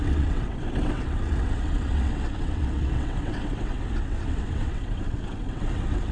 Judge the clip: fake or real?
fake